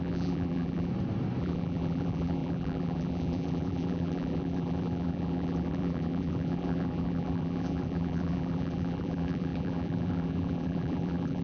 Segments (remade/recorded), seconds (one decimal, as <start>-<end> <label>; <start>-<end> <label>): 0.0-0.9 remade; 0.9-1.4 recorded; 1.4-11.4 remade

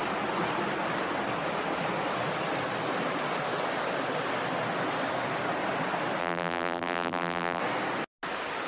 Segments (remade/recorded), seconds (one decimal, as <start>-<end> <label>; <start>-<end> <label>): 0.0-6.2 recorded; 6.2-7.6 remade; 7.6-8.7 recorded

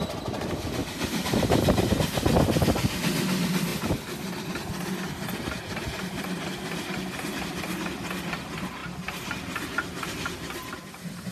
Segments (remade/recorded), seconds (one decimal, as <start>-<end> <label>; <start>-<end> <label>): 0.0-0.8 recorded; 0.8-1.9 remade; 1.9-8.8 recorded; 8.8-10.8 remade; 10.8-11.3 recorded